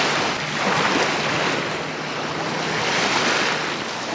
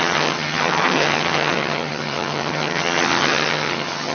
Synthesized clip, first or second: second